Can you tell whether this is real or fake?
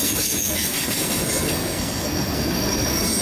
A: fake